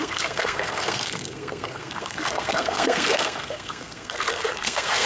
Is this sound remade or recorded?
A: remade